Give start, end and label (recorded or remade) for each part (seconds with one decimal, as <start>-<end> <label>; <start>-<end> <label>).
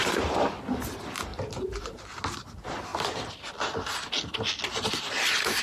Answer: 0.0-0.5 remade; 0.5-1.3 recorded; 1.3-2.2 remade; 2.2-5.6 recorded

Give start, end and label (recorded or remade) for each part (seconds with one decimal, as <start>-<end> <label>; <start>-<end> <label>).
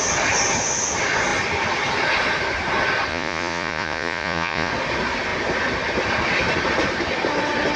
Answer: 0.0-3.1 recorded; 3.1-4.7 remade; 4.7-7.8 recorded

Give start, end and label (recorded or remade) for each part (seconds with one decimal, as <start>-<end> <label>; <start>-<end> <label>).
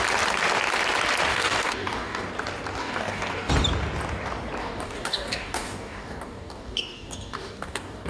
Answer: 0.0-1.3 recorded; 1.3-2.2 remade; 2.2-2.8 recorded; 2.8-3.5 remade; 3.5-4.6 recorded; 4.6-8.1 remade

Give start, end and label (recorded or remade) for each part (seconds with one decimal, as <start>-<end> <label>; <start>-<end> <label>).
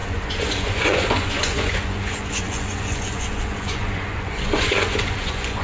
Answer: 0.0-5.6 remade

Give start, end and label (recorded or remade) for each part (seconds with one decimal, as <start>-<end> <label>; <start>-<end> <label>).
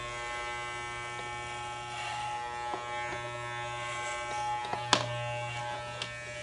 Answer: 0.0-6.4 recorded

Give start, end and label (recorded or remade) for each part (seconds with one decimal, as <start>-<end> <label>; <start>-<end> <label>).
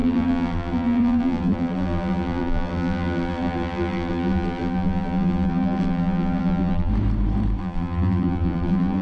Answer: 0.0-6.9 remade; 6.9-7.6 recorded; 7.6-9.0 remade